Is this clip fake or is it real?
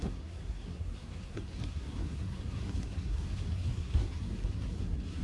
fake